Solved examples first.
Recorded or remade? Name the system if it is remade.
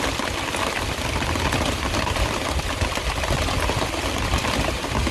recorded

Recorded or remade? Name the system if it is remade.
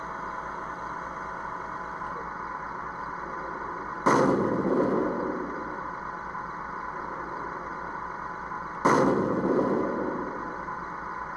recorded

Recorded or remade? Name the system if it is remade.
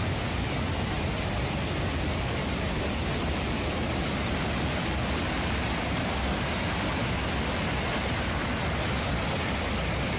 recorded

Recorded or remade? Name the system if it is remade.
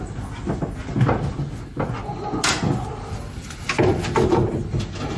recorded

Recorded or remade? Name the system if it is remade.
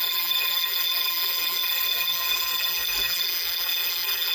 remade, vocoder, BigVGAN v2